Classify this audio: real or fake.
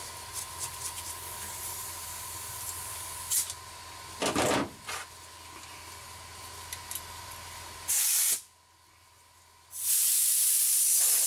real